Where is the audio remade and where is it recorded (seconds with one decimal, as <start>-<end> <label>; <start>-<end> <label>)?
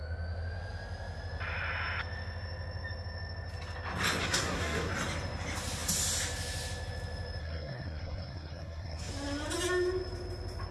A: 0.0-4.2 recorded; 4.2-4.9 remade; 4.9-7.4 recorded; 7.4-9.1 remade; 9.1-10.7 recorded